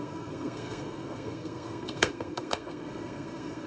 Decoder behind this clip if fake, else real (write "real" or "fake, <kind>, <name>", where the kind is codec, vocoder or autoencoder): fake, codec, SNAC